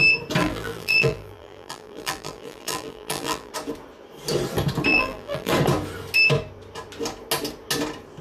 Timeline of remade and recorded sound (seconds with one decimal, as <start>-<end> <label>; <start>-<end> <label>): 0.0-0.4 recorded; 0.4-3.5 remade; 3.5-4.9 recorded; 4.9-5.5 remade; 5.5-8.2 recorded